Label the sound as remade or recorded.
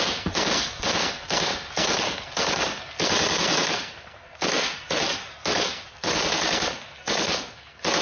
remade